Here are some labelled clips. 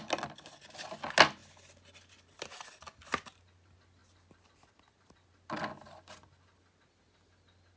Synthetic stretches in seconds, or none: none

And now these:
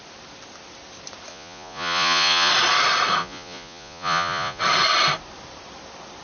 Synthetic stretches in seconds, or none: 1.3-2.5 (vocoder, Vocos); 3.2-4.6